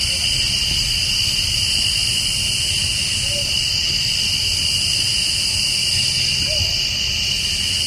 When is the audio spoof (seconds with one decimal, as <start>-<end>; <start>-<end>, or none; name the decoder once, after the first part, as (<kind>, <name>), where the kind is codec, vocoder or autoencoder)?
4.6-5.1 (vocoder, BigVGAN v2)